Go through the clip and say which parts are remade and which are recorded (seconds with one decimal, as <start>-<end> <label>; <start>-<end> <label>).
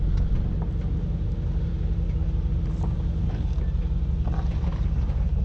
0.0-5.4 recorded